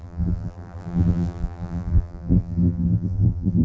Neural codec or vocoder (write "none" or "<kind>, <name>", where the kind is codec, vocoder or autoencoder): vocoder, BigVGAN v2